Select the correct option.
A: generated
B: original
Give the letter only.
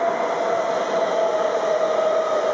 B